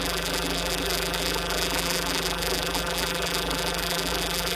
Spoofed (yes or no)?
yes